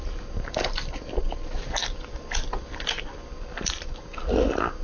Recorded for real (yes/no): yes